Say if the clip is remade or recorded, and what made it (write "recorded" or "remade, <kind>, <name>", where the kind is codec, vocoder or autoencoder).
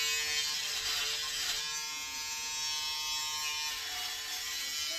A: recorded